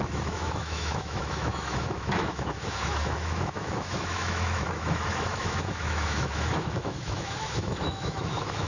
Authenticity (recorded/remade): remade